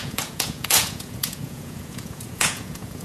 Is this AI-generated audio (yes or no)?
yes